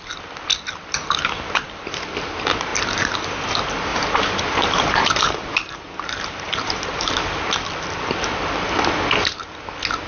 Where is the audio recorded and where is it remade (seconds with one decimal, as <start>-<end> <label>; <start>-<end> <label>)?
0.0-3.9 recorded; 3.9-7.4 remade; 7.4-10.1 recorded